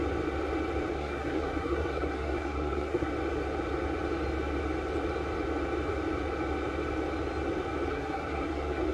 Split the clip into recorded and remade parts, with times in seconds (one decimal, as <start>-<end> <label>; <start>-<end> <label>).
0.0-0.9 recorded; 0.9-3.1 remade; 3.1-7.9 recorded; 7.9-8.9 remade